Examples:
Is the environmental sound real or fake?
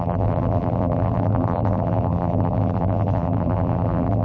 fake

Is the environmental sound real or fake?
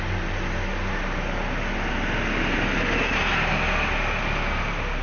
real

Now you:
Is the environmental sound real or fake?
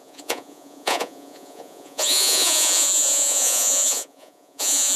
fake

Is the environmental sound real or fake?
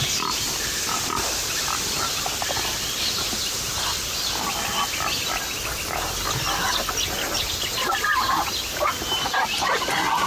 real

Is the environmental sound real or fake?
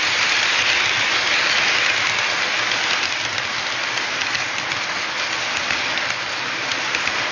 real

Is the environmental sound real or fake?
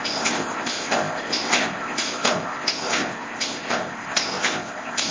fake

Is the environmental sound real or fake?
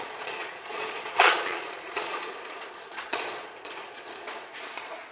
fake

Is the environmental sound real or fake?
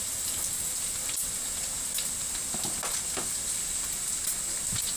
real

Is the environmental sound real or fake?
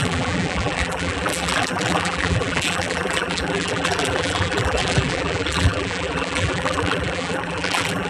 fake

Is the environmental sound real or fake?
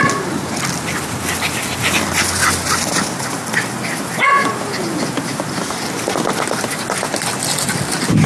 real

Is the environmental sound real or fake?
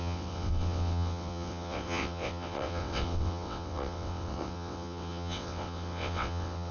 fake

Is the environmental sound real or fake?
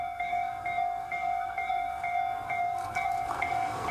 fake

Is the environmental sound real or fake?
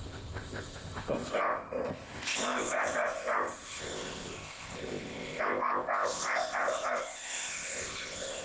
fake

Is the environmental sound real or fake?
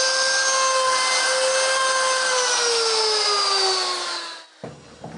real